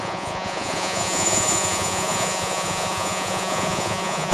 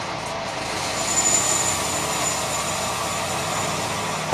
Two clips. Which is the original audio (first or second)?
second